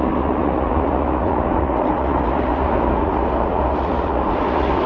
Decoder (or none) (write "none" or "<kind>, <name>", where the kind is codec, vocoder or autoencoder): vocoder, Vocos